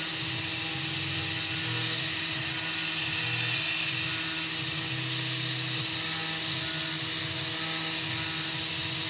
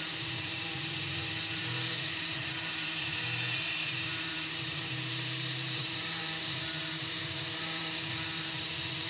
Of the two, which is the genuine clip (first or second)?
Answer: first